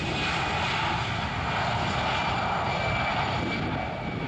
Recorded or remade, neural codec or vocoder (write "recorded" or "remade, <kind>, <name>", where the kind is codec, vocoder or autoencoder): recorded